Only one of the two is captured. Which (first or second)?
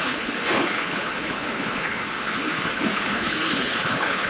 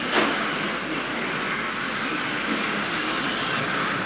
second